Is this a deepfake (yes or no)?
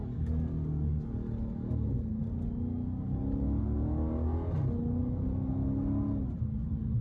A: no